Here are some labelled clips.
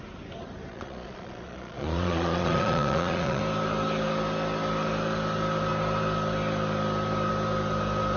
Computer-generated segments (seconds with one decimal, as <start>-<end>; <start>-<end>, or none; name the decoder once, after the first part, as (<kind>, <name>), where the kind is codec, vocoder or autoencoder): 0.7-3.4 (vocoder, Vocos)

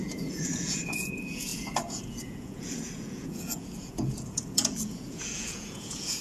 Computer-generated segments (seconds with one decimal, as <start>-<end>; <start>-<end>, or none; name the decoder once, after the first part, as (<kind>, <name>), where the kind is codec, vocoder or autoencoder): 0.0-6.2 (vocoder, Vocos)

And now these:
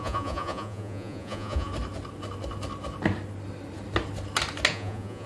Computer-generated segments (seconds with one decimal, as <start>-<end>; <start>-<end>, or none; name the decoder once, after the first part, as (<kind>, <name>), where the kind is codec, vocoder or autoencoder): 0.0-1.7 (vocoder, Vocos); 4.7-5.3

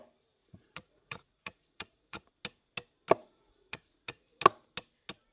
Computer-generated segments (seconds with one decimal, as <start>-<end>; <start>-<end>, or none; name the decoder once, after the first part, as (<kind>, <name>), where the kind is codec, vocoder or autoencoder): 0.4-2.3 (vocoder, Vocos); 3.2-4.4

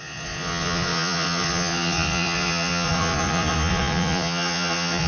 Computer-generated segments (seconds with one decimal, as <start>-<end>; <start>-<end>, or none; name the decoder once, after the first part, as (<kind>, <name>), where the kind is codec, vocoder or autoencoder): 0.0-5.1 (vocoder, Vocos)

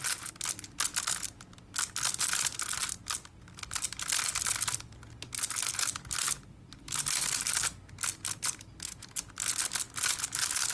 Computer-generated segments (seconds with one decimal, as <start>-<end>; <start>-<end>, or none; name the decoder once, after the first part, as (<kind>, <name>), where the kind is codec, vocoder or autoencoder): none

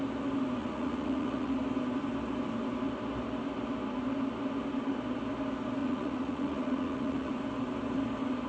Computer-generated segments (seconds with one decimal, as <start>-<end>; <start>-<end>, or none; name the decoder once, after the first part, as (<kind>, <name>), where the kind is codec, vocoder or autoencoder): 0.6-1.5 (vocoder, Vocos); 5.8-7.3